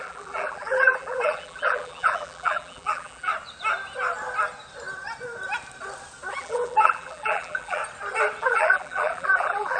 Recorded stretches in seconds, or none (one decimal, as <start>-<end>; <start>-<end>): 3.3-6.3; 7.8-8.4